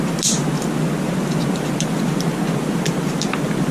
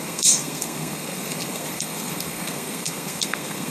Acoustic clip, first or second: first